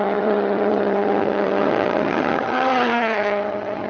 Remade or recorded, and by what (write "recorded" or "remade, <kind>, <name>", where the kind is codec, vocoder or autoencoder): remade, vocoder, HiFi-GAN